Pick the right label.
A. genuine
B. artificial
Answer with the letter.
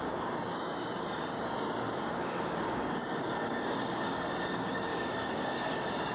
B